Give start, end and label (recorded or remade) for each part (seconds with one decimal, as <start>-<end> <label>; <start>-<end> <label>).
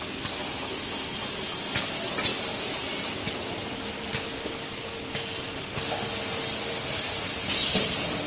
0.0-8.3 recorded